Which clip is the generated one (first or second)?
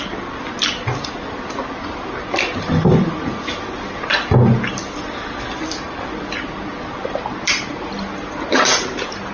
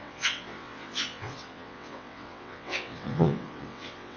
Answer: second